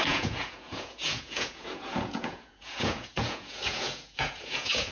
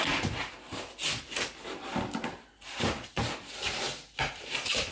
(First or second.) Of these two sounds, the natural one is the second